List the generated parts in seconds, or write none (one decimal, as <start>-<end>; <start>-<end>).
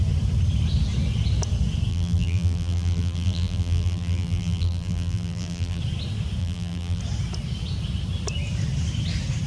1.9-5.8; 6.4-7.0